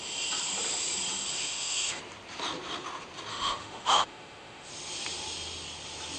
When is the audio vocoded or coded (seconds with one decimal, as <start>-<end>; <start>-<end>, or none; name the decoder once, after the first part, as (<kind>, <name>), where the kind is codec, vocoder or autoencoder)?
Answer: 1.3-2.0 (autoencoder, DAC-VAE); 3.3-4.7